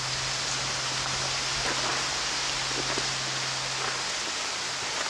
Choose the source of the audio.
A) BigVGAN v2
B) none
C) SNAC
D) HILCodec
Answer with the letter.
B